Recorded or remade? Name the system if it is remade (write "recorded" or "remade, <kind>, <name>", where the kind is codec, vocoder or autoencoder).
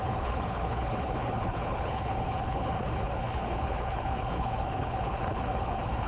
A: remade, codec, HILCodec